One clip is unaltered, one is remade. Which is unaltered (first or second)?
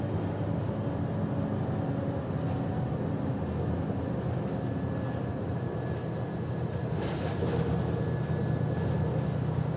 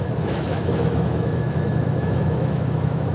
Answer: first